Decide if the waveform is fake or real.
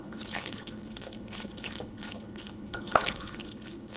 fake